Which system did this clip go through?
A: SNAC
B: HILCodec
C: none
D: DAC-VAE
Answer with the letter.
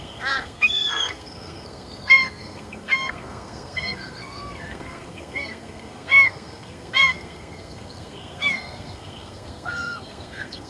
A